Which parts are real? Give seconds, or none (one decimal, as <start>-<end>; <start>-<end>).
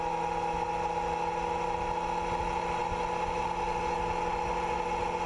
0.0-5.3